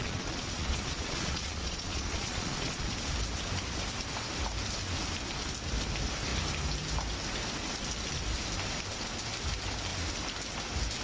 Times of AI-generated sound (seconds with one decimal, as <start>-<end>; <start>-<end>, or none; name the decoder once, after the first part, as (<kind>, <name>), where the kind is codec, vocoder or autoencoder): 0.0-2.9 (vocoder, Vocos)